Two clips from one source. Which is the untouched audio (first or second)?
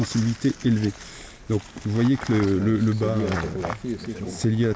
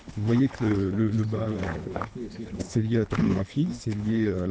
first